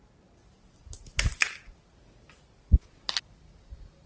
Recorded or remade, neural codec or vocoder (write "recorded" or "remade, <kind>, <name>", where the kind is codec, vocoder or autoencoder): recorded